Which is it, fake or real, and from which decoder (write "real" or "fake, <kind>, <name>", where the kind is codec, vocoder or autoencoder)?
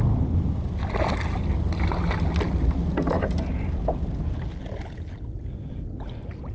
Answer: real